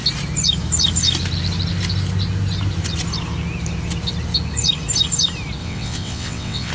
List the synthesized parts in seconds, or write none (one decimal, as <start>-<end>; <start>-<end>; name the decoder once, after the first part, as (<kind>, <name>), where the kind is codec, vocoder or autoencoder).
5.6-6.7 (vocoder, WaveNeXt)